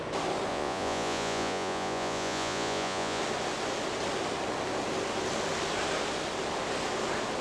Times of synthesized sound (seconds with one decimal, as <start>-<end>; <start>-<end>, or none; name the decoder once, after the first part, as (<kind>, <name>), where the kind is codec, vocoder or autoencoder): 0.5-3.2 (vocoder, Vocos)